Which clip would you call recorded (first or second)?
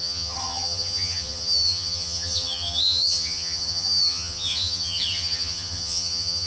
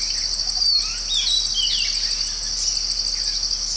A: second